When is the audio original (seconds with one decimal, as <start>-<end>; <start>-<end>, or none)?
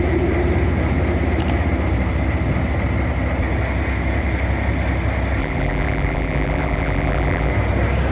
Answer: 0.0-5.4; 7.5-8.1